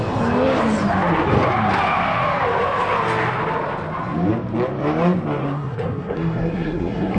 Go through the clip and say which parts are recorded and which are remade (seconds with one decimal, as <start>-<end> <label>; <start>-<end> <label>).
0.0-5.4 recorded; 5.4-7.2 remade